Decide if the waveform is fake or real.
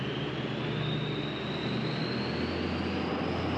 real